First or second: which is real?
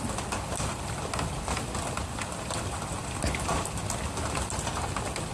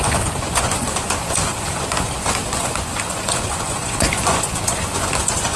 first